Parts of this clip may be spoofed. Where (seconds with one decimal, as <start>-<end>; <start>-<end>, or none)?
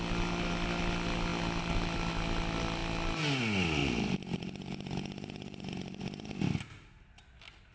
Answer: 3.8-6.0